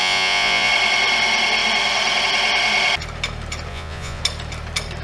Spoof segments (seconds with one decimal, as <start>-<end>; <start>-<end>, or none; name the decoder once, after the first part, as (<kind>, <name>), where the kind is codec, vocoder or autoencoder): 0.0-0.7 (vocoder, Vocos); 3.7-4.2